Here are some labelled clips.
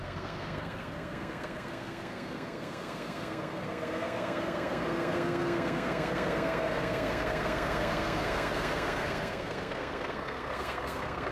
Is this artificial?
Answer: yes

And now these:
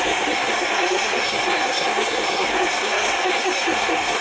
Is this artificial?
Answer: yes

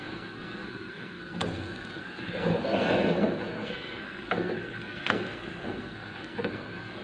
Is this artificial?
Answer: yes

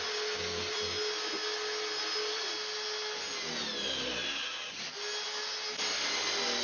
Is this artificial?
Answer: no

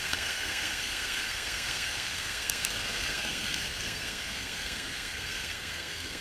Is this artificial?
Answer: yes